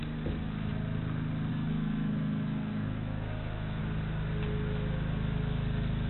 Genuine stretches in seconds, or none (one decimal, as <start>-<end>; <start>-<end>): 0.0-1.5; 3.8-6.1